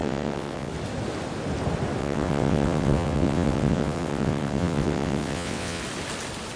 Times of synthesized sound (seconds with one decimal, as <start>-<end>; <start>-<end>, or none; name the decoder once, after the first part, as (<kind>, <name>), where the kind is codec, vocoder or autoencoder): 0.0-0.7 (vocoder, WaveNeXt); 2.0-5.8